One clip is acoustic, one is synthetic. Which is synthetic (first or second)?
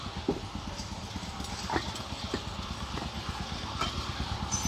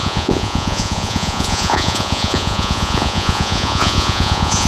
second